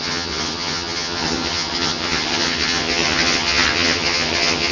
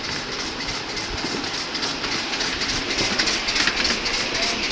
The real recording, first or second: second